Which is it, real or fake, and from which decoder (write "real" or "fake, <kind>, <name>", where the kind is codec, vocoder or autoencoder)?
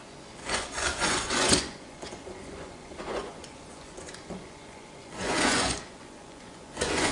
fake, vocoder, Vocos